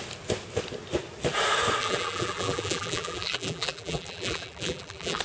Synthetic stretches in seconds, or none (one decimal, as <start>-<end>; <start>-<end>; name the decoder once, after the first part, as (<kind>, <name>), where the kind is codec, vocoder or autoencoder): 1.8-5.2 (vocoder, BigVGAN v2)